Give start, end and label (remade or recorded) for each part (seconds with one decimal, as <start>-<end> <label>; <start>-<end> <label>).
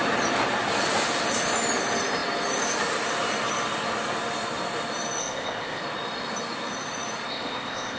0.0-5.2 recorded; 5.2-5.8 remade; 5.8-7.3 recorded; 7.3-8.0 remade